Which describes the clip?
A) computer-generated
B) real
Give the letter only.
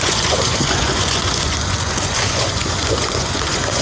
A